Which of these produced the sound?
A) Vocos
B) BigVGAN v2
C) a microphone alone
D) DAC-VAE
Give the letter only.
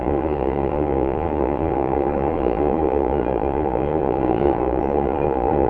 A